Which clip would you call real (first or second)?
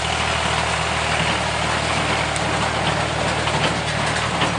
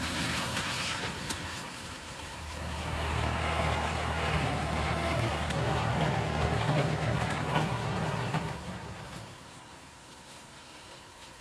first